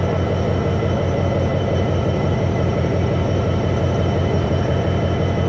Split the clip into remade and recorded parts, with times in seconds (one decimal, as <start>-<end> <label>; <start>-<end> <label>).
0.0-1.5 recorded; 1.5-4.8 remade; 4.8-5.5 recorded